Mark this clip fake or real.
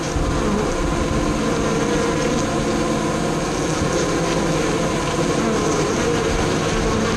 real